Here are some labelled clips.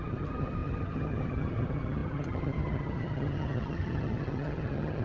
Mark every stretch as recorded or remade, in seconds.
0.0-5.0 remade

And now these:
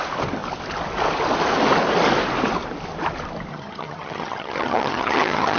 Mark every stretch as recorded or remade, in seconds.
0.0-3.5 recorded; 3.5-5.6 remade

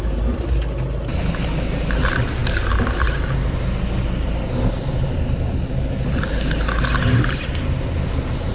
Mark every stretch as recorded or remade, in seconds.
0.0-8.5 recorded

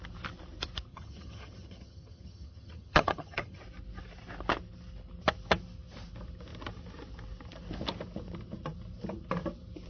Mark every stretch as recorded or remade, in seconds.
0.0-0.9 recorded; 0.9-3.6 remade; 3.6-9.9 recorded

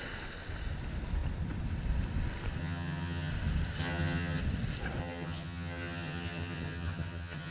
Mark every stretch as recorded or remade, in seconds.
0.0-2.6 recorded; 2.6-3.3 remade; 3.3-3.8 recorded; 3.8-4.4 remade; 4.4-5.0 recorded; 5.0-7.5 remade

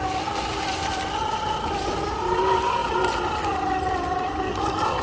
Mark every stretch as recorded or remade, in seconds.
0.0-5.0 recorded

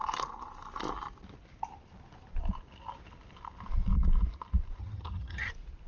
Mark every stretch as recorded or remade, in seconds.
0.0-4.8 recorded; 4.8-5.5 remade; 5.5-5.9 recorded